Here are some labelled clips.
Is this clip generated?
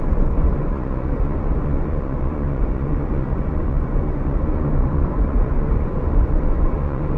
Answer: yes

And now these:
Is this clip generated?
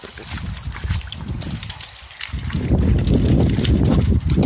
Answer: no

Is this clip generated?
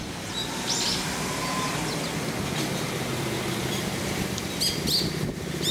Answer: no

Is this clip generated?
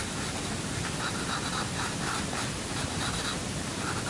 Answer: no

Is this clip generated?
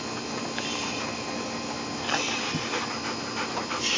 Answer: no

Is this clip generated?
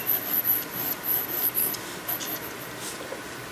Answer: no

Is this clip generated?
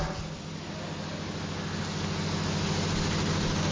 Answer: no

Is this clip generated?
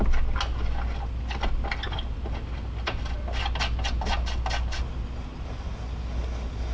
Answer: no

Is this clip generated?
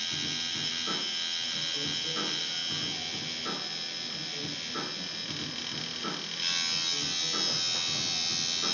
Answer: no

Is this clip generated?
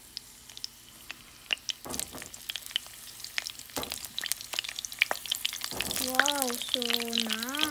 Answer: no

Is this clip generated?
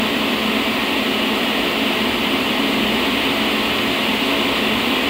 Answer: no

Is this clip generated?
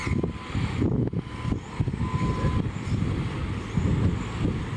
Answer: no